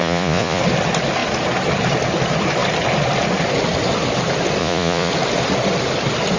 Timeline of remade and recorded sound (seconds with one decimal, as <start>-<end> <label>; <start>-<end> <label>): 0.0-0.6 remade; 0.6-4.6 recorded; 4.6-5.1 remade; 5.1-6.4 recorded